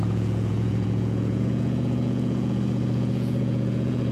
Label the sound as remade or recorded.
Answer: remade